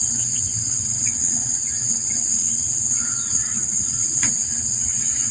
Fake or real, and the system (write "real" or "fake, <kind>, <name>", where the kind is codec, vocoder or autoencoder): fake, vocoder, WaveNeXt